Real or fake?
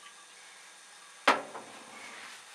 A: real